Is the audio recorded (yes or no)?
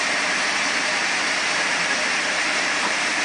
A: no